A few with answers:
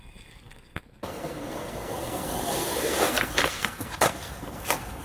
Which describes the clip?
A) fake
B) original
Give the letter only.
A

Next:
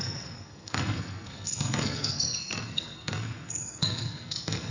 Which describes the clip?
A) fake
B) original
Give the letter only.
A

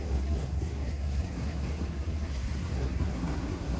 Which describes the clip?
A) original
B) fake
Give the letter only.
B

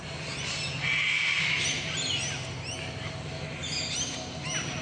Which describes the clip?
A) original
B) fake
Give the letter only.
A